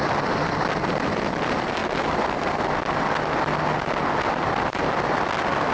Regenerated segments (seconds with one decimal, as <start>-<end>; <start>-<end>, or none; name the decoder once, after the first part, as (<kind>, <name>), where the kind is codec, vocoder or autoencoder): none